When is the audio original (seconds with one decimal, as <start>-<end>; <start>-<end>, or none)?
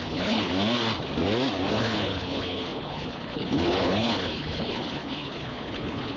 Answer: 0.5-1.7